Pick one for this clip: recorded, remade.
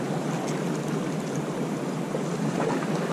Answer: recorded